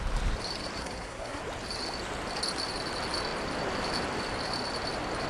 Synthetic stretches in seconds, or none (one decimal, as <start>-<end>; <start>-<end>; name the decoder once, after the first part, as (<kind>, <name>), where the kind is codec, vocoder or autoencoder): 0.8-1.4 (codec, SNAC)